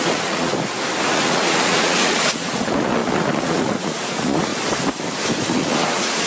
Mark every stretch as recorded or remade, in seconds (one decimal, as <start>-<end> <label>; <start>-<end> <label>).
0.0-0.5 remade; 0.5-1.1 recorded; 1.1-4.5 remade; 4.5-5.4 recorded; 5.4-6.3 remade